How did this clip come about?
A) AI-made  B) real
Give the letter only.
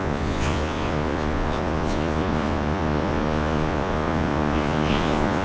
A